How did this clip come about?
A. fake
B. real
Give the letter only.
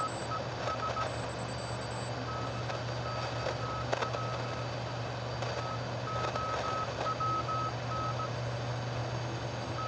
B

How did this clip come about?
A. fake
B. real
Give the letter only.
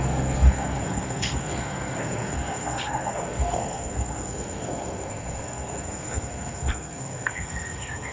A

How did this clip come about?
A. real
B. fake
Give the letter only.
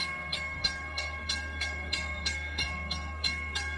B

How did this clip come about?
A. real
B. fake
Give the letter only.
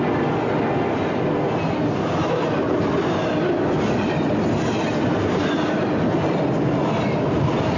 A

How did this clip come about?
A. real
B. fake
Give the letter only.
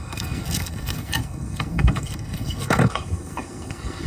B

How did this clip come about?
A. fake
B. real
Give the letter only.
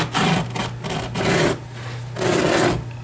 B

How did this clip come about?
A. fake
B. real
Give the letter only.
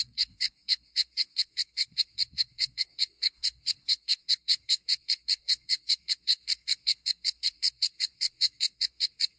A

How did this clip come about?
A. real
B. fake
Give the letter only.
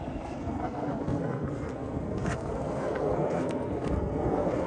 B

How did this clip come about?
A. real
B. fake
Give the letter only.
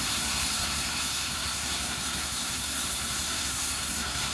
B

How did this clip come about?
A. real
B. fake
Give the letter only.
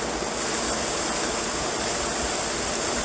A